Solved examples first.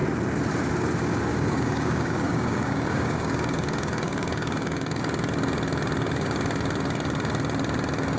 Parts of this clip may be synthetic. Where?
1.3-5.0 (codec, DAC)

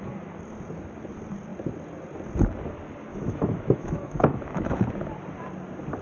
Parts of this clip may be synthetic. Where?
3.1-4.9 (autoencoder, DAC-VAE)

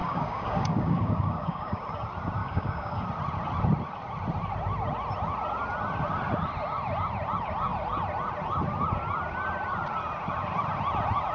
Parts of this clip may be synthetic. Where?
0.0-1.8 (codec, DAC); 2.4-3.0

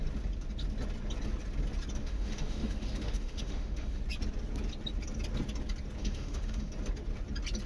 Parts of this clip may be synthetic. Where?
2.0-4.0 (autoencoder, DAC-VAE); 6.0-6.7

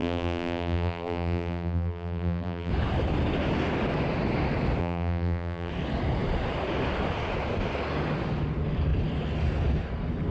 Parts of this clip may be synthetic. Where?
0.0-2.7 (vocoder, BigVGAN v2); 4.8-5.7

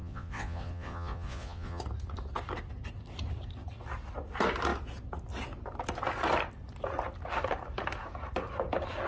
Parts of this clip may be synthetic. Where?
0.0-1.8 (vocoder, Vocos)

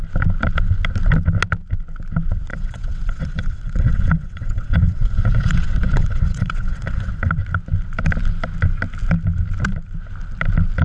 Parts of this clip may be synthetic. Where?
2.5-7.1 (vocoder, WaveNeXt)

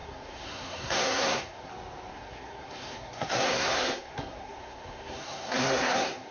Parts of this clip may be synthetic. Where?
0.0-1.7 (codec, SNAC); 2.1-6.3